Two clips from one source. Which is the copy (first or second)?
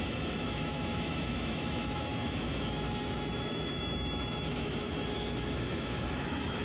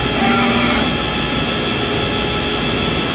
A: first